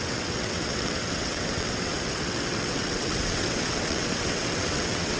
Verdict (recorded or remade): remade